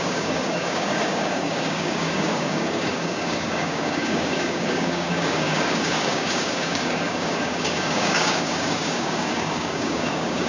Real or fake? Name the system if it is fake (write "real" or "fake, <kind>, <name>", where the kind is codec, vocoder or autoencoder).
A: fake, codec, DAC